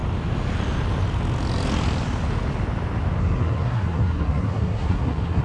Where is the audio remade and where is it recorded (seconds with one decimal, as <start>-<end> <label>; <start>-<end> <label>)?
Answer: 0.0-3.2 recorded; 3.2-5.4 remade